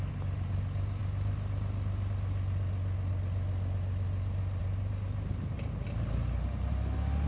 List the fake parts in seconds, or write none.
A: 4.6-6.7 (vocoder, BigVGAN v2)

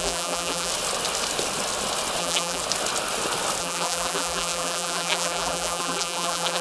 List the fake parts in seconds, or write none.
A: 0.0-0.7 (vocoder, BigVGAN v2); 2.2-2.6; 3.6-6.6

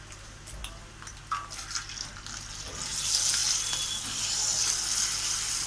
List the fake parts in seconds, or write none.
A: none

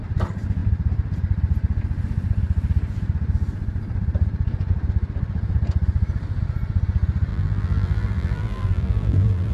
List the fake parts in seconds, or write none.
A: 7.3-9.5 (vocoder, BigVGAN v2)

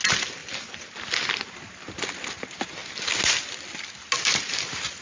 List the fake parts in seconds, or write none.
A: none

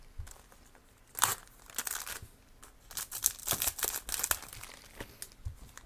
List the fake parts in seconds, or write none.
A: none